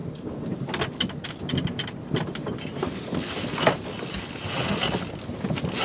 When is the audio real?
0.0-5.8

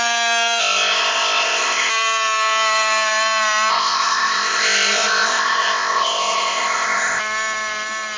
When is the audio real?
0.0-0.6; 1.9-3.7; 7.2-8.2

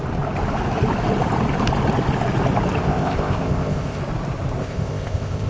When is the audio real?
0.0-2.8; 4.0-4.6

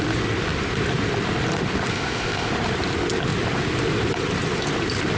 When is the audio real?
0.0-1.9; 2.5-5.2

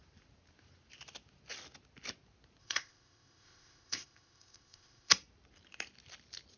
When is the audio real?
0.0-2.6; 5.1-6.6

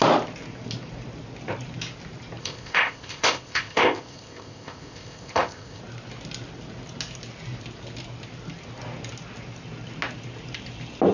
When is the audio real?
0.0-2.4; 5.8-11.1

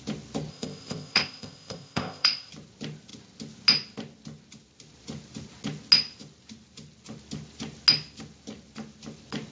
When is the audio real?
0.0-0.5; 2.5-9.5